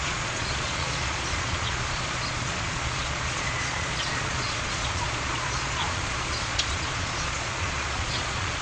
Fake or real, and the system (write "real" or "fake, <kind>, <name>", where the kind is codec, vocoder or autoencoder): fake, vocoder, Vocos